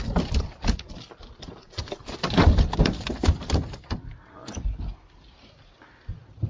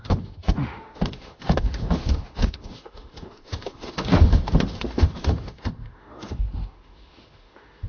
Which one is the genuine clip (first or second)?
first